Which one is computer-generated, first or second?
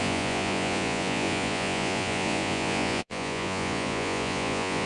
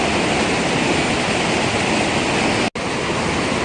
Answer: first